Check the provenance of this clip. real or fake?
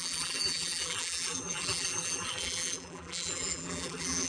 fake